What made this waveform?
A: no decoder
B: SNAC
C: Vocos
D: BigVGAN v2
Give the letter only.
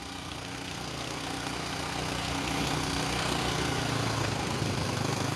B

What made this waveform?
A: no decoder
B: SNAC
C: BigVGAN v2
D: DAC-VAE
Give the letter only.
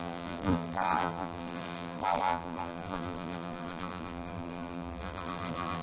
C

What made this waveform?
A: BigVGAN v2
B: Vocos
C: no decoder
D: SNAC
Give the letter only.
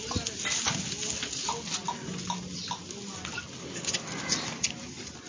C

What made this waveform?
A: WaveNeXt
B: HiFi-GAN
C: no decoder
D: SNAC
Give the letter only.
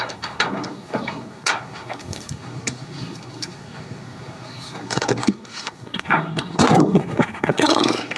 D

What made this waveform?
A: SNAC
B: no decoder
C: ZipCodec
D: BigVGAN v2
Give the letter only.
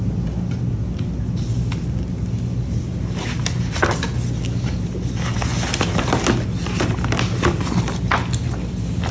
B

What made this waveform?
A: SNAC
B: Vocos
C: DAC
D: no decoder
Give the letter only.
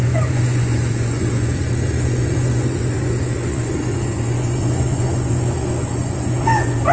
B